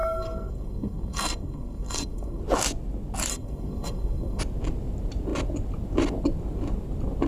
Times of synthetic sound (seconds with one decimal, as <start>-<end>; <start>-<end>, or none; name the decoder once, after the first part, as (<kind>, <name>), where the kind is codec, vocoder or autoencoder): 0.0-2.4 (codec, SNAC); 3.3-4.4